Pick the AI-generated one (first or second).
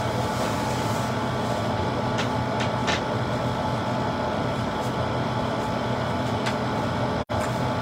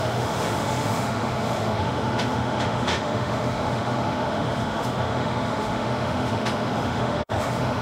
second